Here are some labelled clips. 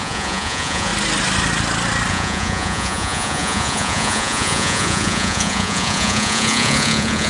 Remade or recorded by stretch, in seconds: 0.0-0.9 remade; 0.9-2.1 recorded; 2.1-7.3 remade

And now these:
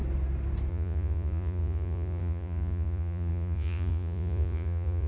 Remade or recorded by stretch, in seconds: 0.0-0.7 recorded; 0.7-5.1 remade

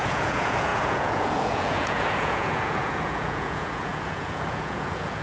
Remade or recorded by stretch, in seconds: 0.0-5.2 remade